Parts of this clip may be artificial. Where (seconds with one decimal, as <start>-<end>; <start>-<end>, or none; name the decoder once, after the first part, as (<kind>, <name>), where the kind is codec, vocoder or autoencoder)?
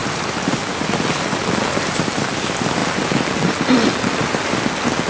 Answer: 0.0-0.5 (vocoder, BigVGAN v2)